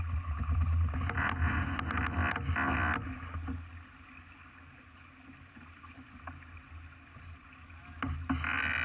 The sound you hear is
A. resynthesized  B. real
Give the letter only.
B